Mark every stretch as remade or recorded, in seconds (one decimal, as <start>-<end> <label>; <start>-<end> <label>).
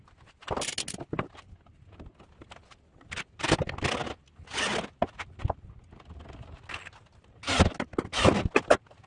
0.0-9.1 recorded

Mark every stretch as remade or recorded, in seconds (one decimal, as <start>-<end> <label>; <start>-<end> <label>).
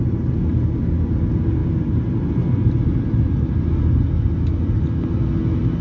0.0-5.8 recorded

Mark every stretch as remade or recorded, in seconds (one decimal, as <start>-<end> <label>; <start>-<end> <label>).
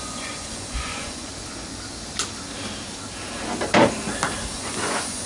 0.0-1.3 remade; 1.3-4.5 recorded; 4.5-5.3 remade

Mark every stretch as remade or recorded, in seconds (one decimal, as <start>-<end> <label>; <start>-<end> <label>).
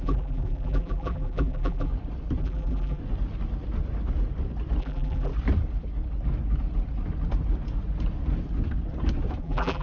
0.0-1.9 remade; 1.9-2.4 recorded; 2.4-3.0 remade; 3.0-4.8 recorded; 4.8-5.3 remade; 5.3-9.4 recorded; 9.4-9.8 remade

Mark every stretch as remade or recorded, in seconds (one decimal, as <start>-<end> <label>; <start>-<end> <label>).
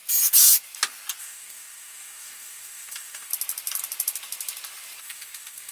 0.0-1.2 recorded; 1.2-3.3 remade; 3.3-5.0 recorded; 5.0-5.7 remade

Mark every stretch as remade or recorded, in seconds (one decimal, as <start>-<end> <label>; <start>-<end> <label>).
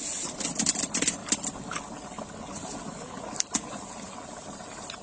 0.0-5.0 recorded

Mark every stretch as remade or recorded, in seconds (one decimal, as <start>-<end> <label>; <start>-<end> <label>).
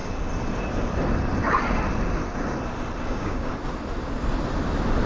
0.0-3.1 recorded; 3.1-3.5 remade; 3.5-5.1 recorded